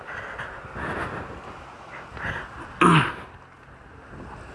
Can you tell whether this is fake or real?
real